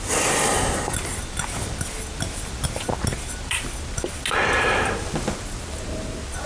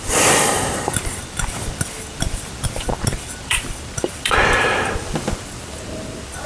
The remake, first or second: second